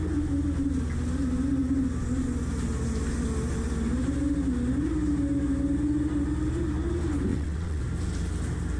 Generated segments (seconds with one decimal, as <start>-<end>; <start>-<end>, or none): 7.3-7.8